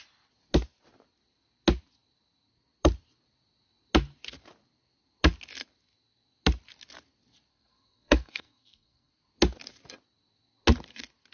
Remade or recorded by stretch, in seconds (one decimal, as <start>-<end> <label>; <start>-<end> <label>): 0.0-7.5 recorded; 7.5-9.1 remade; 9.1-11.3 recorded